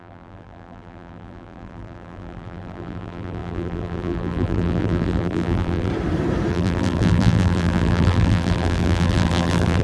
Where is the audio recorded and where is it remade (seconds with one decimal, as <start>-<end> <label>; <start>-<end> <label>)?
0.0-5.9 remade; 5.9-6.5 recorded; 6.5-9.8 remade